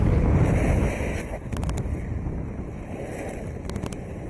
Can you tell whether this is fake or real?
real